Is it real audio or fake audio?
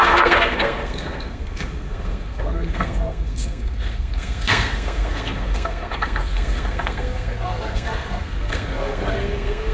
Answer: fake